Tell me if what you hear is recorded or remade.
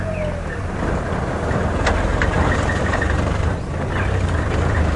recorded